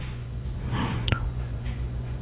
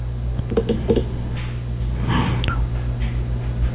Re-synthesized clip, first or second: first